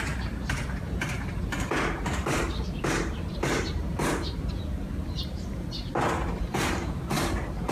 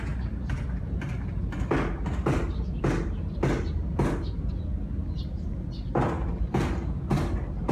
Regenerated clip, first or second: first